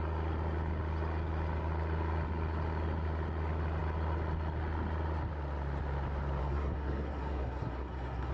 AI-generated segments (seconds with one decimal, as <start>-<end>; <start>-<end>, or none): 6.4-8.3